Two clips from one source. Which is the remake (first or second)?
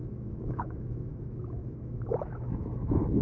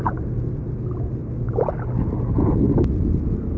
first